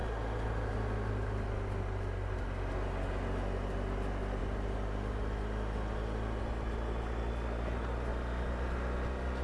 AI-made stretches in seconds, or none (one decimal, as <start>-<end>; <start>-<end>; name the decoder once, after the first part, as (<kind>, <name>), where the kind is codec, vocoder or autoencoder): none